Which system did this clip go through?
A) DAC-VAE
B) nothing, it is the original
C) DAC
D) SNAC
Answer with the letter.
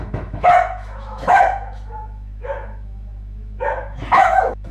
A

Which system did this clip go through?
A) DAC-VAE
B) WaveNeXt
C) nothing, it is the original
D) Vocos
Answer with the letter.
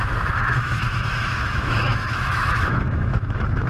A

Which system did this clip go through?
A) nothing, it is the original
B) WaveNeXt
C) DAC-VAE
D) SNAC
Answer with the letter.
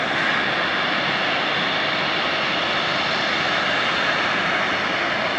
A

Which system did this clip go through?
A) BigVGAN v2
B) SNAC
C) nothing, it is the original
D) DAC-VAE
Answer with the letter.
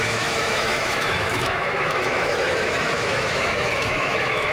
D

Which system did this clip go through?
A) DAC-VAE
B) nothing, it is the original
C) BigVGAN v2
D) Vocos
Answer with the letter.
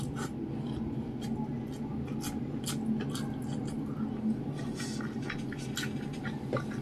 B